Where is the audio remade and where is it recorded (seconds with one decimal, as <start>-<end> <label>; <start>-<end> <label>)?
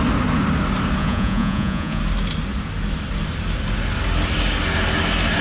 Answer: 0.0-1.0 recorded; 1.0-2.0 remade; 2.0-5.4 recorded